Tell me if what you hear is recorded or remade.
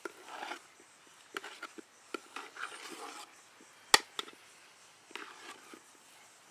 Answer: recorded